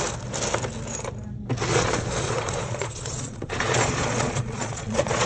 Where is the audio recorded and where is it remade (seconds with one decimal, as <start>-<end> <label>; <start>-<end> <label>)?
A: 0.0-1.7 recorded; 1.7-5.3 remade